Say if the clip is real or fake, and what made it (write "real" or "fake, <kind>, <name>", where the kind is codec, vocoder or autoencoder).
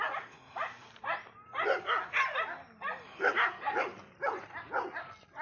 real